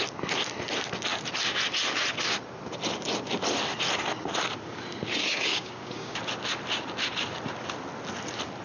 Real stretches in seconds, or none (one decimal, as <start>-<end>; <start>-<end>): 0.0-5.3; 6.2-8.6